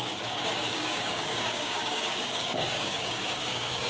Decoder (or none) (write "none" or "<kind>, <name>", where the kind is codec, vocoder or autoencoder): codec, DAC